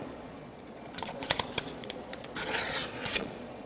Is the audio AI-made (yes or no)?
yes